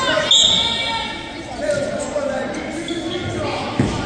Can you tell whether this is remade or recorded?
recorded